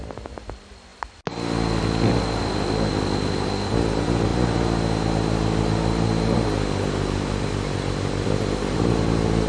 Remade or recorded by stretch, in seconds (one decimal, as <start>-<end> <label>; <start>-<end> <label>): 0.0-9.5 recorded